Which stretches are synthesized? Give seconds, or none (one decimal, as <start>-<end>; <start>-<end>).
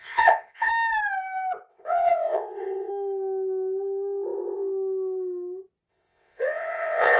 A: 0.0-0.7; 1.7-2.9; 5.9-7.2